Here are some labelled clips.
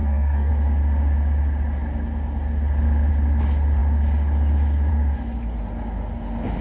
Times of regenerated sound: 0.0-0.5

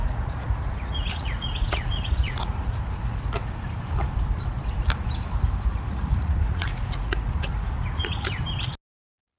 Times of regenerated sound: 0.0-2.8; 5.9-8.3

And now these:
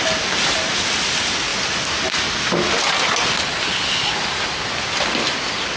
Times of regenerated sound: none

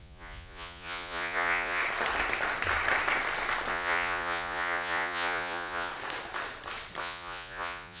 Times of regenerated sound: 0.0-1.8; 3.7-5.9; 7.0-8.0

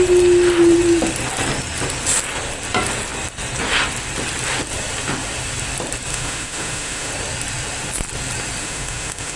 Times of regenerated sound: 6.1-7.1; 8.6-9.4

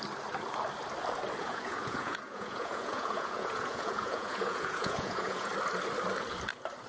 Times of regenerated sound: 1.4-5.5